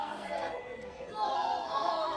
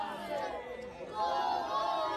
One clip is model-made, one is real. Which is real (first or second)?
second